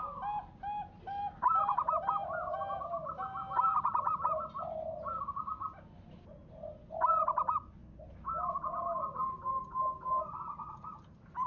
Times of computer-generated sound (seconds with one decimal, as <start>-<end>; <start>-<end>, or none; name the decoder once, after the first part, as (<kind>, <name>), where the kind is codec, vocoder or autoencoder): none